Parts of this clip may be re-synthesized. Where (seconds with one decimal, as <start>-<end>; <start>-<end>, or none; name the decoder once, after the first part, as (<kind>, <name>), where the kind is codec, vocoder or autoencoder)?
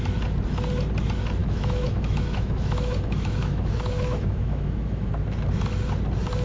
1.4-5.1 (autoencoder, DAC-VAE)